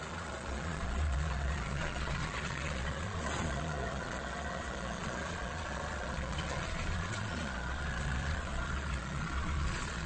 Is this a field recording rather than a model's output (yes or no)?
no